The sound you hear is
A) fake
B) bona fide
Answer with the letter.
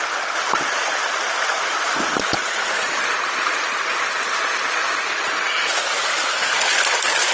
A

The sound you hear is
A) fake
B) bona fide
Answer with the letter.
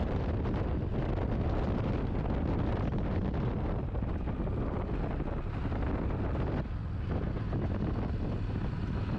B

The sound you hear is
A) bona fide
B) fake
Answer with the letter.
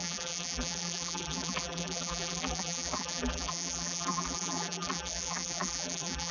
B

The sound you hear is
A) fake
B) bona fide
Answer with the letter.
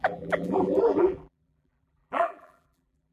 A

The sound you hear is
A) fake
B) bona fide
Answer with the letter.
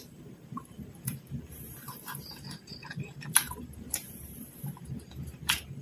A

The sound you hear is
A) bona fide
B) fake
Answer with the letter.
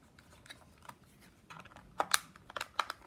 A